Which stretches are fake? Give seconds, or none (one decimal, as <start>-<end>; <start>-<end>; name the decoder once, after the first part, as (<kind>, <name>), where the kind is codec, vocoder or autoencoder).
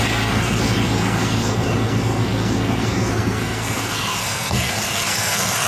0.0-5.7 (codec, SNAC)